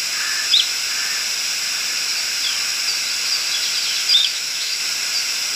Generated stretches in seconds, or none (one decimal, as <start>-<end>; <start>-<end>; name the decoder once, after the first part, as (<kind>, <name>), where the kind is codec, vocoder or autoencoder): 4.2-4.8 (autoencoder, DAC-VAE)